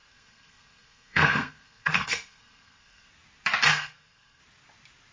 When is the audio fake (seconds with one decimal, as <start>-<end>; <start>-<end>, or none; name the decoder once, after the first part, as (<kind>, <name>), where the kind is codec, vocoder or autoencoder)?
0.0-3.1 (codec, SNAC); 3.7-4.4